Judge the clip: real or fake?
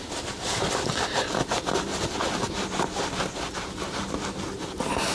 real